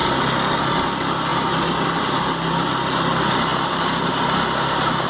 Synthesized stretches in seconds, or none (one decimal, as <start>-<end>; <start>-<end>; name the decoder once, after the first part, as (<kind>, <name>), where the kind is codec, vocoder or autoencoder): 0.0-3.5 (vocoder, BigVGAN v2); 4.1-5.1